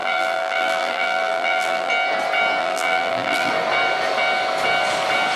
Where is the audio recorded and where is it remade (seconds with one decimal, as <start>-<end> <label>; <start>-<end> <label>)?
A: 0.0-1.9 remade; 1.9-2.6 recorded; 2.6-3.5 remade; 3.5-5.4 recorded

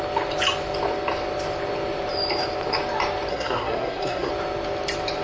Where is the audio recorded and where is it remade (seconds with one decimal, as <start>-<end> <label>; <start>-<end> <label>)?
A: 0.0-3.3 recorded; 3.3-4.3 remade; 4.3-5.2 recorded